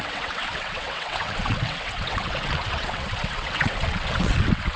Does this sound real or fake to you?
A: fake